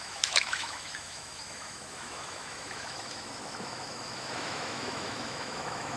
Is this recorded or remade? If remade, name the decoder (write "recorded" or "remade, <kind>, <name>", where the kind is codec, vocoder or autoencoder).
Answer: remade, autoencoder, DAC-VAE